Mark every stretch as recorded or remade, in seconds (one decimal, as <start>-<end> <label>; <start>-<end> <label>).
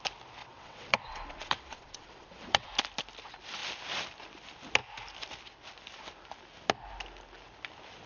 0.0-0.4 recorded; 0.4-2.7 remade; 2.7-8.1 recorded